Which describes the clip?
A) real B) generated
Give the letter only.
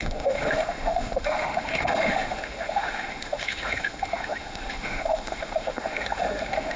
B